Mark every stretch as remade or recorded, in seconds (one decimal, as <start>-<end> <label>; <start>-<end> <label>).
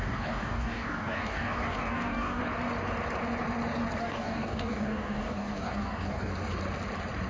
0.0-2.4 remade; 2.4-4.0 recorded; 4.0-6.3 remade; 6.3-7.3 recorded